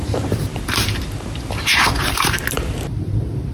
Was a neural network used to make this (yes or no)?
yes